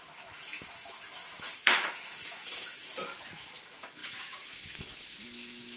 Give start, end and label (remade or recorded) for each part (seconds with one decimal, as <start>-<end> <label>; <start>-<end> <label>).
0.0-2.9 remade; 2.9-3.4 recorded; 3.4-5.8 remade